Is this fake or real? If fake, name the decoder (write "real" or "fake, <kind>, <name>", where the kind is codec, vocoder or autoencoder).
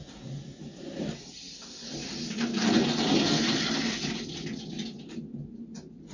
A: real